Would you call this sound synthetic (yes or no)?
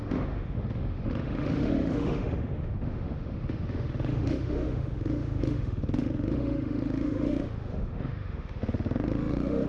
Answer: yes